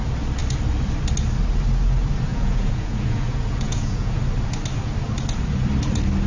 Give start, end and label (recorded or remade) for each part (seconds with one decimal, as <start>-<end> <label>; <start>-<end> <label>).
0.0-2.3 recorded; 2.3-4.2 remade; 4.2-6.3 recorded